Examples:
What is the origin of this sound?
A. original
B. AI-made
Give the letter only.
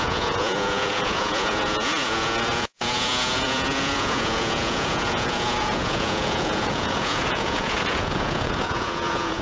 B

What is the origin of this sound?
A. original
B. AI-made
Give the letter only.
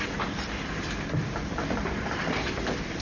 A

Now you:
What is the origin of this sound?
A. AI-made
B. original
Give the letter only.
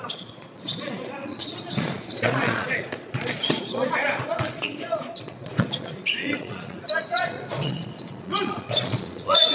A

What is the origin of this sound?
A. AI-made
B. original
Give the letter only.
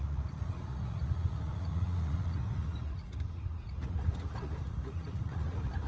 A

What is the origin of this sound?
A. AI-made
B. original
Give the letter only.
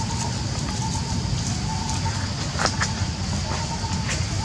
B